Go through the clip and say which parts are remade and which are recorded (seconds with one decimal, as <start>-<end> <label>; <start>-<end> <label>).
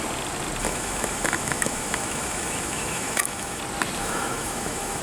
0.0-0.6 recorded; 0.6-3.6 remade; 3.6-4.0 recorded; 4.0-5.0 remade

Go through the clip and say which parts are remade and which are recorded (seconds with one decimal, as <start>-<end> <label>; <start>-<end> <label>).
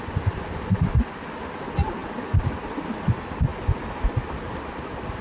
0.0-5.2 recorded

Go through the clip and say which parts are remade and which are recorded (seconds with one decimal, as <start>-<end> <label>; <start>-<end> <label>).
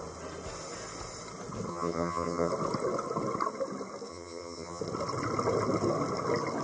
0.0-1.7 recorded; 1.7-2.5 remade; 2.5-4.1 recorded; 4.1-4.8 remade; 4.8-6.6 recorded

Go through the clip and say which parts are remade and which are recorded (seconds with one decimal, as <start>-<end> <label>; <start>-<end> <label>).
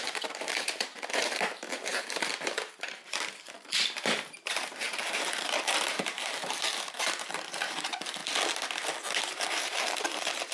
0.0-8.2 remade; 8.2-9.2 recorded; 9.2-10.5 remade